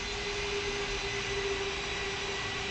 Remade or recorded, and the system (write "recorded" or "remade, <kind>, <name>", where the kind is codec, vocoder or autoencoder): recorded